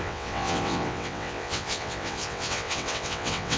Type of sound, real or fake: fake